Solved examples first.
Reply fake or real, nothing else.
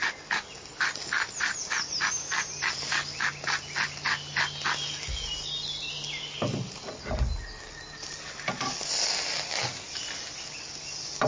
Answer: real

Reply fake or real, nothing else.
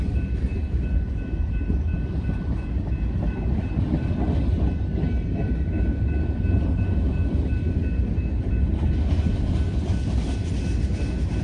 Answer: real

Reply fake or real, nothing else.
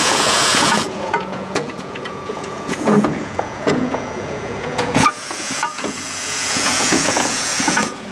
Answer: fake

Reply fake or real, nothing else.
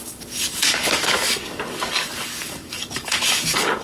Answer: fake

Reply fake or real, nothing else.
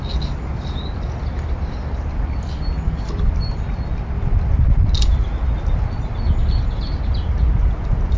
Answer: real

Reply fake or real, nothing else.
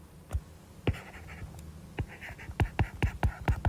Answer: real